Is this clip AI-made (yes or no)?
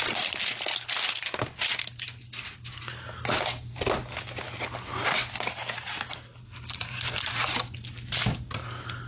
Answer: no